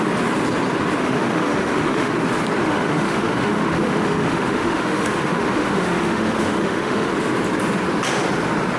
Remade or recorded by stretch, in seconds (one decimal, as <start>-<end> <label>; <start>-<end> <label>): 0.0-1.0 recorded; 1.0-2.1 remade; 2.1-2.6 recorded; 2.6-7.1 remade; 7.1-8.8 recorded